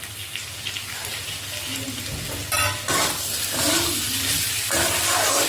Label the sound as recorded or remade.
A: recorded